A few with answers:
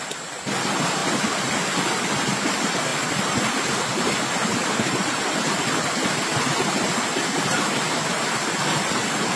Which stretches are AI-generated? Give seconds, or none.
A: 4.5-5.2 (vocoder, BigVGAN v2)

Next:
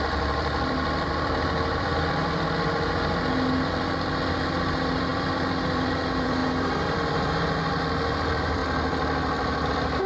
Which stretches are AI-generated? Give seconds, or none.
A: 0.0-8.6 (vocoder, BigVGAN v2); 9.7-10.1

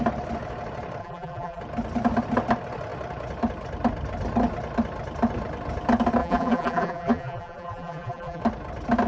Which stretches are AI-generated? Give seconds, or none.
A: 1.0-1.6 (vocoder, BigVGAN v2); 6.2-8.4